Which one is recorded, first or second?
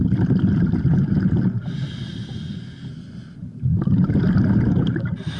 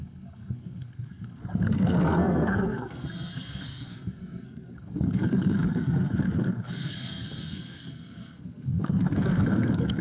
first